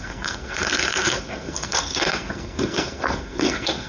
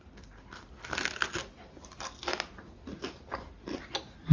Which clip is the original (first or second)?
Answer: second